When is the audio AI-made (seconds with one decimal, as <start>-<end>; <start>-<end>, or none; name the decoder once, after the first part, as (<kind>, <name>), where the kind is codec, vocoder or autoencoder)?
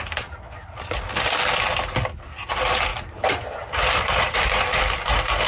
2.9-4.5 (vocoder, BigVGAN v2)